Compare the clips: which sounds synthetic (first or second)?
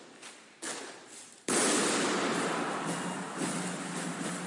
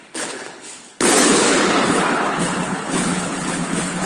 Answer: second